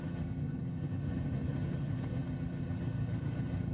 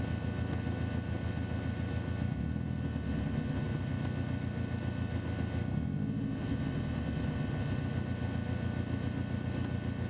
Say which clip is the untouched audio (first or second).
second